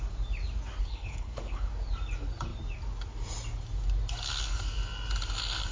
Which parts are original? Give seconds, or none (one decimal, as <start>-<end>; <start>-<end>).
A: 0.0-0.8; 1.7-5.7